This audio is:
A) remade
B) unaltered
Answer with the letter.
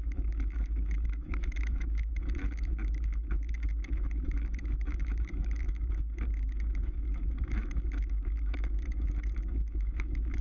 A